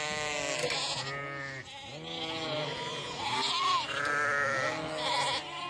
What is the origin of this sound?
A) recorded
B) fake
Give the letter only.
A